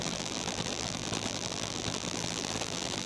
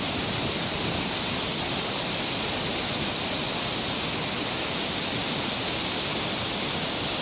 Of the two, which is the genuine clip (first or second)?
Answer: second